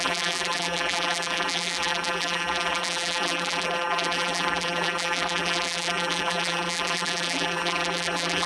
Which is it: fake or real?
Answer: fake